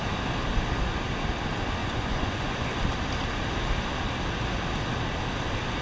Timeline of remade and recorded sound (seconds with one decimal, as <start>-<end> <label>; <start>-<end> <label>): 0.0-1.8 recorded; 1.8-2.7 remade; 2.7-5.8 recorded